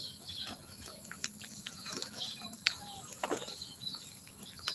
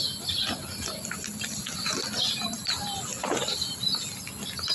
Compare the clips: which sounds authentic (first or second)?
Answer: second